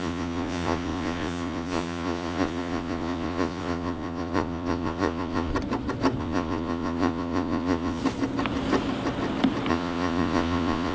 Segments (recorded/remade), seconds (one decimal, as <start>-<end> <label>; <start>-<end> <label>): 0.0-5.5 remade; 5.5-6.2 recorded; 6.2-8.0 remade; 8.0-9.7 recorded; 9.7-10.9 remade